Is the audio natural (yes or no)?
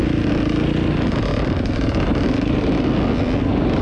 yes